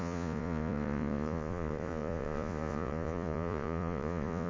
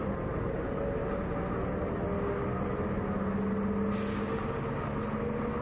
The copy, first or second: first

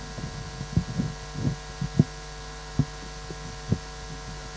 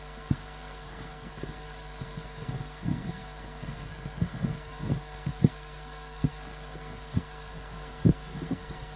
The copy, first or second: second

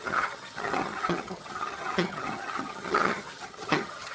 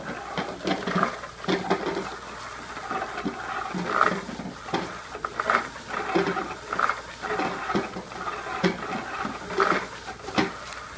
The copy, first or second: first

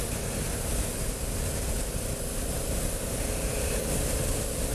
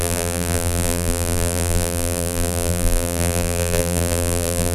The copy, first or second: second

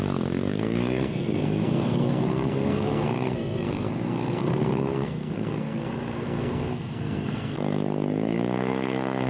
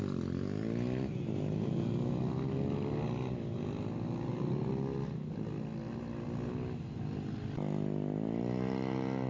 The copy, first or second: first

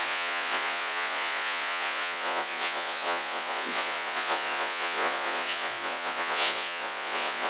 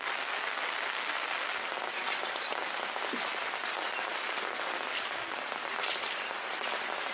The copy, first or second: first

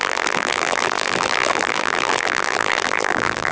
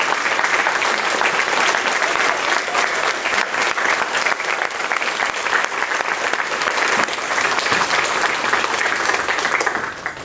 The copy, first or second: first